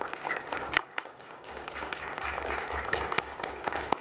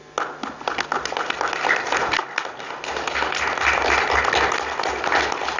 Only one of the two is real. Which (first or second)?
second